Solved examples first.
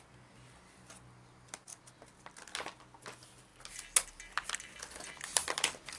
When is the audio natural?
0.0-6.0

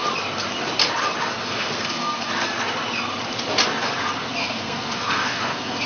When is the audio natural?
0.0-1.4; 2.3-4.4

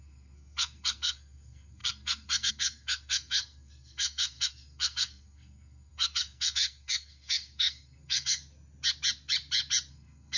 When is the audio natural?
8.4-9.9

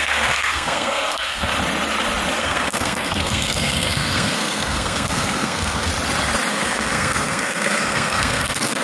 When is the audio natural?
1.5-2.4; 5.9-6.5

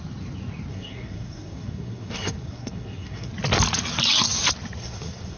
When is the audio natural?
0.0-0.7; 3.3-4.8

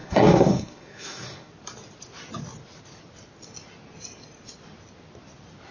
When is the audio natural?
1.5-5.7

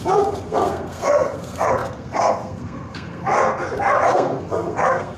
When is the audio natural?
none